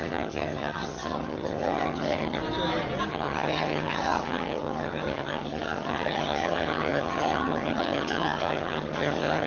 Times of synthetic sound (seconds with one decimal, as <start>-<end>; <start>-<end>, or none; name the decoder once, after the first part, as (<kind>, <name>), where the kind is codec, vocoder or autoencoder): 0.0-2.4 (vocoder, HiFi-GAN); 3.1-9.5